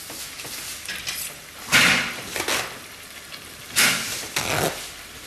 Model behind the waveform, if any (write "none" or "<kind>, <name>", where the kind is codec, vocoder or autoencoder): none